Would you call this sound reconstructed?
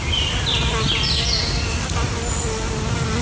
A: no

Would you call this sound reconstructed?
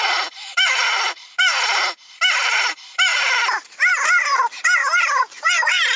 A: yes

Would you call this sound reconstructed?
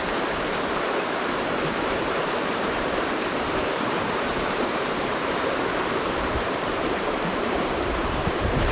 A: yes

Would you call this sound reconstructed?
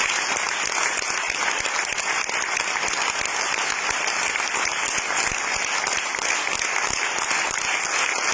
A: no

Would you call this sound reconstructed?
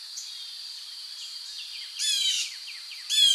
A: yes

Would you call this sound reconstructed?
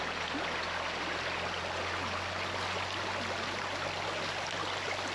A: no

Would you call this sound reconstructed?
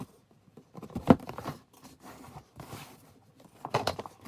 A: yes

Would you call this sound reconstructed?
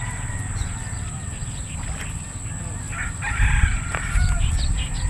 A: no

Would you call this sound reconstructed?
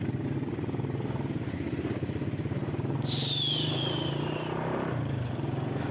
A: no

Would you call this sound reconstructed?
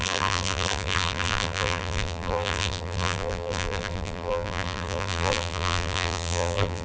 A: yes